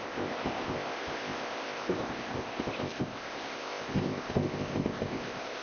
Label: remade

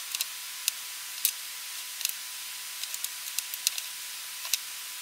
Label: recorded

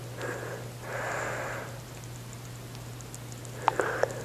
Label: recorded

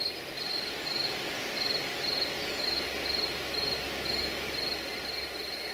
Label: recorded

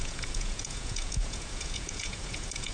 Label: remade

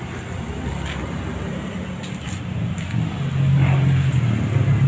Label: recorded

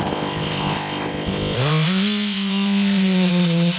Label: remade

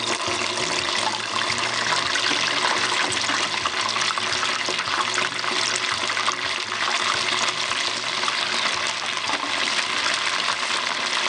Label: remade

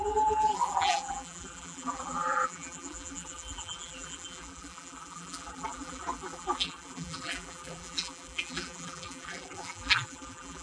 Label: remade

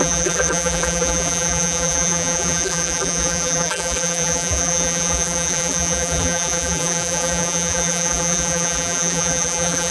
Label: remade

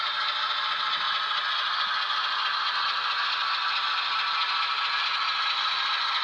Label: recorded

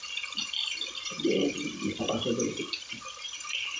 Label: recorded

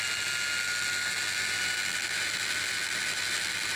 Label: recorded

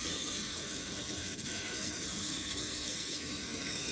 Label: remade